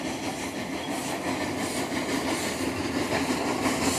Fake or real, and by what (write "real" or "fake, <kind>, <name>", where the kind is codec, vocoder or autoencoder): real